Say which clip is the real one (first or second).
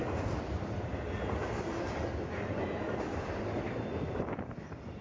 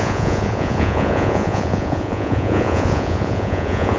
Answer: first